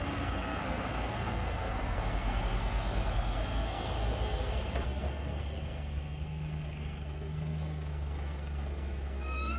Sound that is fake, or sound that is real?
fake